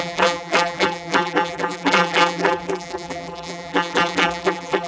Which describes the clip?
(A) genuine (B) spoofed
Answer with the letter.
B